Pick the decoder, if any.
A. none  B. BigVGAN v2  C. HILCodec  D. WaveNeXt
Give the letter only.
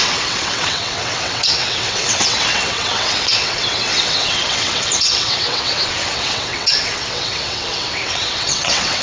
D